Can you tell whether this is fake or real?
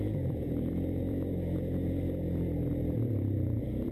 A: fake